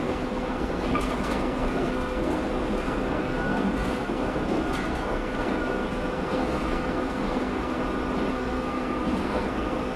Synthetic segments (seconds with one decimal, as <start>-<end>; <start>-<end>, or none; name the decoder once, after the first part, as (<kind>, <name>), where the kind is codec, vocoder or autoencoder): 0.0-7.8 (codec, SNAC); 8.3-10.0